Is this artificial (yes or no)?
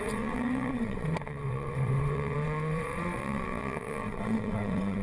yes